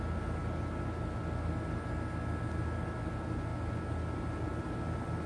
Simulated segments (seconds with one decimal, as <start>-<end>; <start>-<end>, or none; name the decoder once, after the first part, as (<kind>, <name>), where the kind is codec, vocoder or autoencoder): none